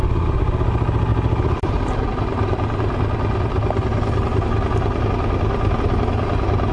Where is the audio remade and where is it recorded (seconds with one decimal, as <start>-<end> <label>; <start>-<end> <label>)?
0.0-6.7 recorded